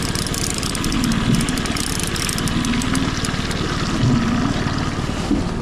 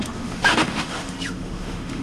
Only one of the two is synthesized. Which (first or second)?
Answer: second